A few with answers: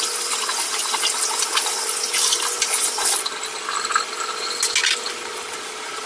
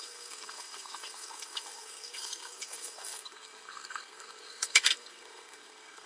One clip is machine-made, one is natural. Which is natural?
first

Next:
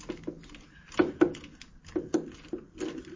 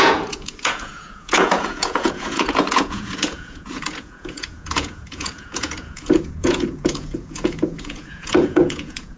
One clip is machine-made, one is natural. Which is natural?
first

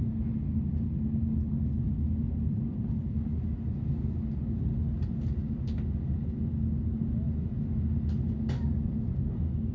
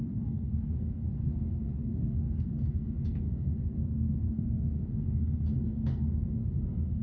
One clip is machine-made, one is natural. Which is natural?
first